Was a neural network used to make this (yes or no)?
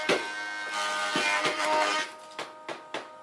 no